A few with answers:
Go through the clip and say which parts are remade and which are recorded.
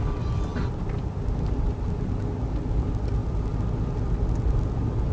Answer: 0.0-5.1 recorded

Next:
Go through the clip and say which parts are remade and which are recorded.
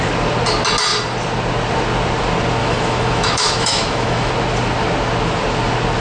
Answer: 0.0-2.6 recorded; 2.6-4.3 remade; 4.3-6.0 recorded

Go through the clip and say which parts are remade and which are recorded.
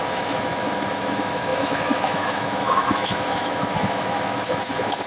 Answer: 0.0-5.1 remade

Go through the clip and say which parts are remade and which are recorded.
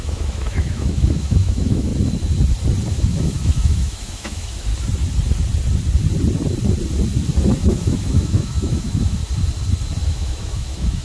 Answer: 0.0-1.9 remade; 1.9-2.9 recorded; 2.9-4.7 remade; 4.7-7.6 recorded; 7.6-9.2 remade; 9.2-10.1 recorded; 10.1-11.0 remade